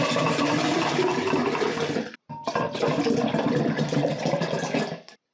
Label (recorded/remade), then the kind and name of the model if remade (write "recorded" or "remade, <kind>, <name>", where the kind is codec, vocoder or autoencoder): recorded